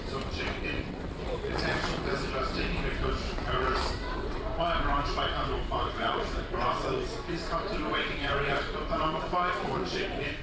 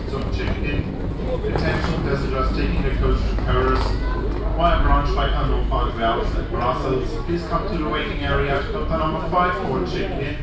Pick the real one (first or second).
second